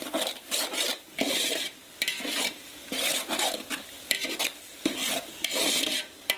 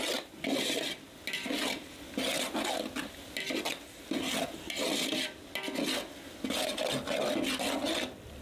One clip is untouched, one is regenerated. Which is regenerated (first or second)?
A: first